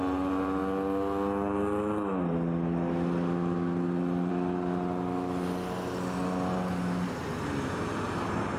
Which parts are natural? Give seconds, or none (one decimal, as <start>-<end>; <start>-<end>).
0.0-8.6